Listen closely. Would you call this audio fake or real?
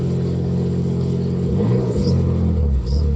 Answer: fake